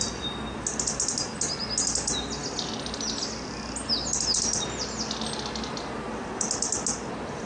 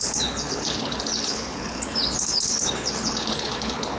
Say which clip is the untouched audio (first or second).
first